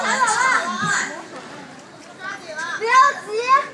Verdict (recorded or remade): recorded